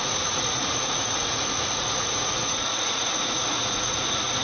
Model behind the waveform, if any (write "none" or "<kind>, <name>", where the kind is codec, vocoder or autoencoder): vocoder, Vocos